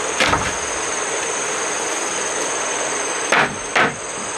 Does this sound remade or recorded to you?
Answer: recorded